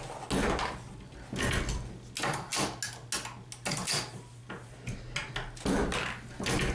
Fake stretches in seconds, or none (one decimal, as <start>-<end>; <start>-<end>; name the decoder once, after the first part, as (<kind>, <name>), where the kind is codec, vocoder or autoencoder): none

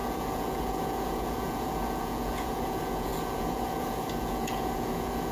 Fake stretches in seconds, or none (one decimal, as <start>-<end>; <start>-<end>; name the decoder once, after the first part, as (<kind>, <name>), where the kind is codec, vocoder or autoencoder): 0.0-5.3 (vocoder, Vocos)